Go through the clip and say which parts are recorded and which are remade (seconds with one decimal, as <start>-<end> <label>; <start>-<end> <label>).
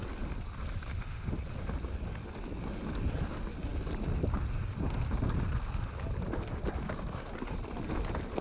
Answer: 0.0-0.9 recorded; 0.9-1.4 remade; 1.4-8.4 recorded